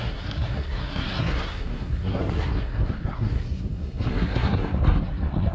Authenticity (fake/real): fake